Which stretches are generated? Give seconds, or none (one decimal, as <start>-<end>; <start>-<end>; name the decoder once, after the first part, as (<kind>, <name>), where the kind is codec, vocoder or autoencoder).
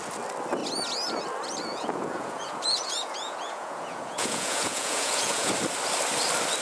1.7-5.5 (vocoder, Vocos)